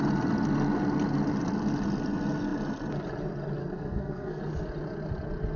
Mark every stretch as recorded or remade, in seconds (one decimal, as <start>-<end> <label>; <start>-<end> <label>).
0.0-3.6 recorded; 3.6-4.4 remade; 4.4-5.6 recorded